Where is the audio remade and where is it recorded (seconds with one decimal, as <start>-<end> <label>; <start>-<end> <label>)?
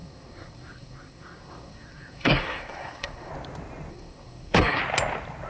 0.0-3.3 remade; 3.3-3.9 recorded; 3.9-4.8 remade; 4.8-5.5 recorded